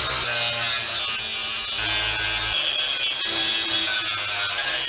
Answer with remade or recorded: recorded